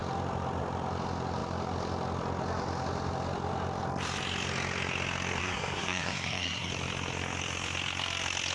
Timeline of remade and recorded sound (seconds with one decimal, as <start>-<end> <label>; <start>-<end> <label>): 0.0-5.4 recorded; 5.4-6.7 remade; 6.7-8.5 recorded